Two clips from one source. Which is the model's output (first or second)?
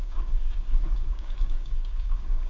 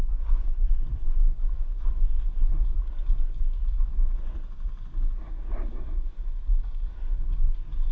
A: first